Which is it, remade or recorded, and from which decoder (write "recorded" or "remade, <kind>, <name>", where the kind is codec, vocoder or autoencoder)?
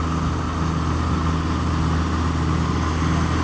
recorded